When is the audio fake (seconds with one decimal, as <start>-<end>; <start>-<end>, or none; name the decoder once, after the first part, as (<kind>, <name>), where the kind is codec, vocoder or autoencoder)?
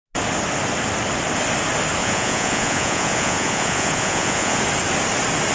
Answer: 2.0-4.6 (vocoder, Vocos)